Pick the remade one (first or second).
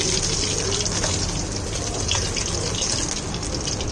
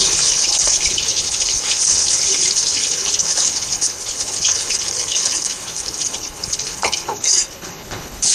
second